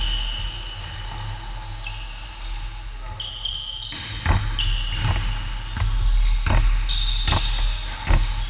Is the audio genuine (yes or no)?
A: yes